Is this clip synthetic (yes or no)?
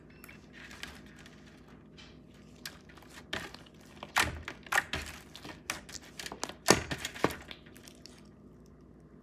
no